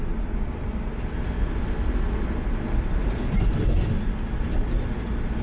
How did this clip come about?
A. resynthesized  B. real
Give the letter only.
B